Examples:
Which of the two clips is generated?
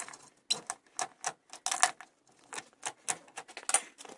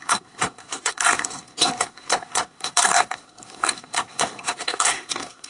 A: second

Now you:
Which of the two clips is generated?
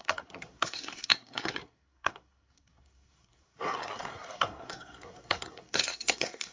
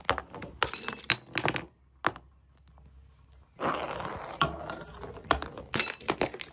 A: first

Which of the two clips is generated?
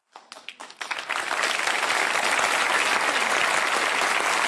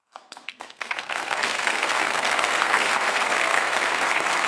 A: second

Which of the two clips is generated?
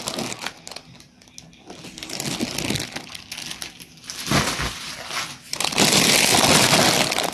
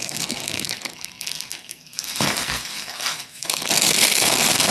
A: second